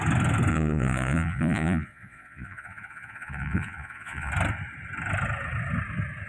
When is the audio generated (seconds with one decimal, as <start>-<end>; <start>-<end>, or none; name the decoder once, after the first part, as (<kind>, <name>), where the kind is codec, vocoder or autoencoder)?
0.5-4.3 (vocoder, Vocos)